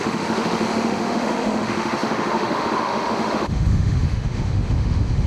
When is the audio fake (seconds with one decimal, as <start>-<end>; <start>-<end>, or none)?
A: 0.0-5.3